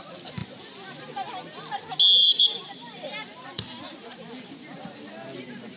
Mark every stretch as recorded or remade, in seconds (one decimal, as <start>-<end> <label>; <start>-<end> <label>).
0.0-0.4 recorded; 0.4-1.0 remade; 1.0-2.2 recorded; 2.2-4.5 remade; 4.5-5.8 recorded